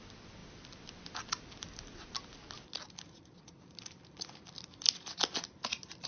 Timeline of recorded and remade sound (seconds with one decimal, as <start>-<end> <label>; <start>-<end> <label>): 0.0-6.1 recorded